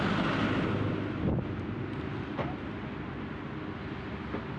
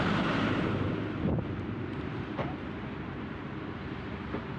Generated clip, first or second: second